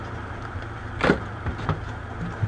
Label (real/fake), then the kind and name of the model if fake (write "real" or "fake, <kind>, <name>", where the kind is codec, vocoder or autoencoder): fake, vocoder, BigVGAN v2